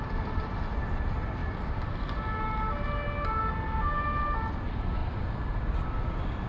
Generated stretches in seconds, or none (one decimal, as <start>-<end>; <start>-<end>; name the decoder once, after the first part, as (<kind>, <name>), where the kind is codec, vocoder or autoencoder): none